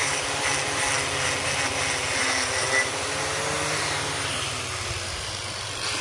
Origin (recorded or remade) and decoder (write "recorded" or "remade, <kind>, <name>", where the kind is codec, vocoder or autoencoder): recorded